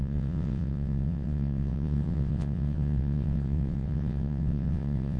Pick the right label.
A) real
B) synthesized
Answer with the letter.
B